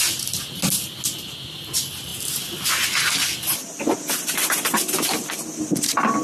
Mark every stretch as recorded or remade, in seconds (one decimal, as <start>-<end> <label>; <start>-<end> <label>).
0.0-6.2 recorded